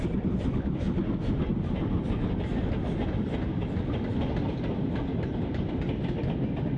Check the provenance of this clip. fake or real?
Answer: real